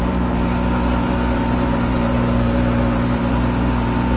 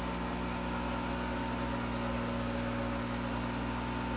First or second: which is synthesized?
first